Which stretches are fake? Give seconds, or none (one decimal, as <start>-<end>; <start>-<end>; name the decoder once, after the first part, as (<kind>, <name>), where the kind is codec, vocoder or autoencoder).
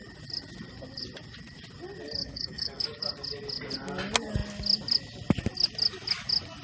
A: 2.2-2.8 (codec, DAC)